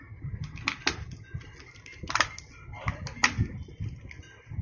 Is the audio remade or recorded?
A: recorded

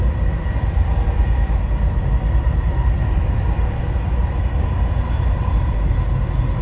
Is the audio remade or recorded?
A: recorded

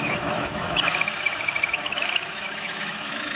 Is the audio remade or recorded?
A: remade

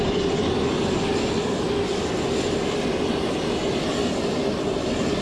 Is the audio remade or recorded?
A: recorded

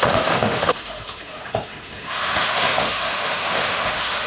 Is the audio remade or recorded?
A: remade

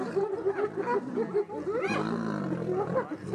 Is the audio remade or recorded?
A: recorded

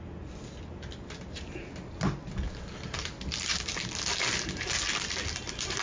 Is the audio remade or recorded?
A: recorded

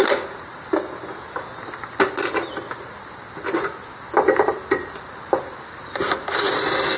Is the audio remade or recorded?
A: recorded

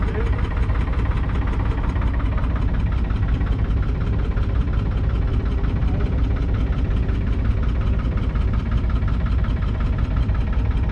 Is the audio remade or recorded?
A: recorded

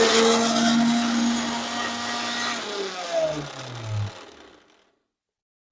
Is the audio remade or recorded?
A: recorded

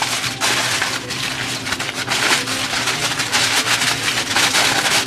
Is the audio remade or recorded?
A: recorded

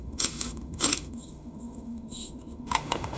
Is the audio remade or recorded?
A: remade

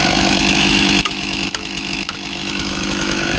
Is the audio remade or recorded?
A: remade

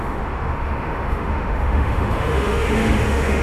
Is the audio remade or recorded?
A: remade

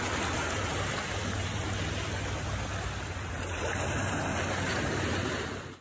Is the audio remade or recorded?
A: recorded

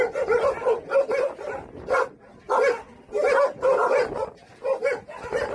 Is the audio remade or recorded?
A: recorded